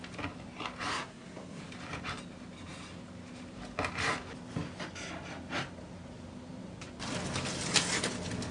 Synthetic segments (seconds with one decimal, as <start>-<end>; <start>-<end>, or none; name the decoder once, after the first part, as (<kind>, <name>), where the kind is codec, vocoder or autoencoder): 0.9-1.6 (codec, SNAC)